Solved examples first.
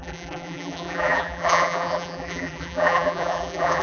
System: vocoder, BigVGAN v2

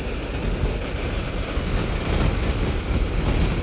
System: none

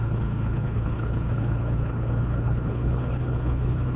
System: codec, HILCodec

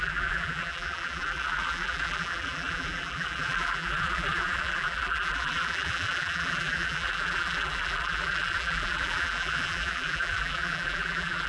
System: vocoder, BigVGAN v2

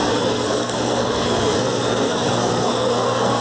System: codec, SNAC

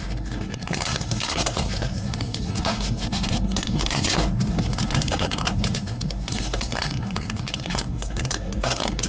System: codec, SNAC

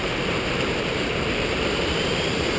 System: vocoder, BigVGAN v2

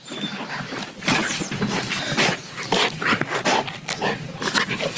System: vocoder, BigVGAN v2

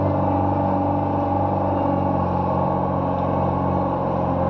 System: none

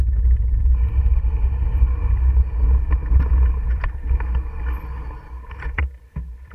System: none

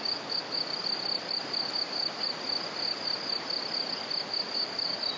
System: none